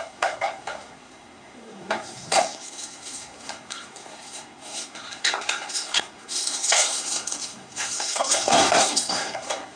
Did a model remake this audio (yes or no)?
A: yes